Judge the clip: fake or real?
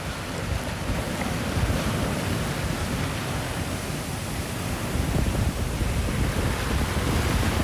real